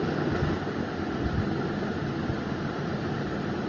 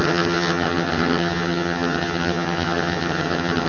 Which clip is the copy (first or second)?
second